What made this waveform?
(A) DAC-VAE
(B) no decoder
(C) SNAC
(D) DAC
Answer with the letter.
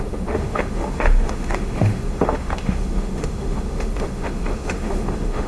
A